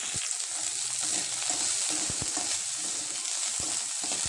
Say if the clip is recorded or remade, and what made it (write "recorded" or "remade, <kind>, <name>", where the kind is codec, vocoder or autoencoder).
recorded